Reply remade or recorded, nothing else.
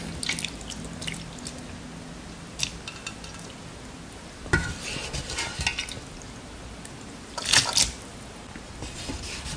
recorded